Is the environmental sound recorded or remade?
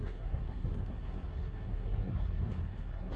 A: remade